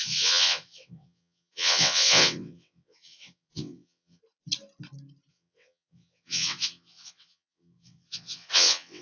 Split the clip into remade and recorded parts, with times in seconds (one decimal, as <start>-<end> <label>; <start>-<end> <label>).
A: 0.0-4.2 remade; 4.2-5.3 recorded; 5.3-9.0 remade